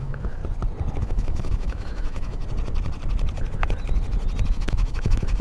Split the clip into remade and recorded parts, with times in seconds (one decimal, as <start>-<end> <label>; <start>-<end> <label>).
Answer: 0.0-0.4 remade; 0.4-1.0 recorded; 1.0-2.4 remade; 2.4-4.5 recorded; 4.5-5.4 remade

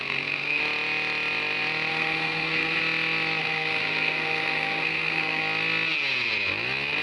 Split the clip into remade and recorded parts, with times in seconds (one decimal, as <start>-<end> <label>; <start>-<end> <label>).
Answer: 0.0-0.6 remade; 0.6-1.9 recorded; 1.9-2.8 remade; 2.8-3.4 recorded; 3.4-5.4 remade; 5.4-7.0 recorded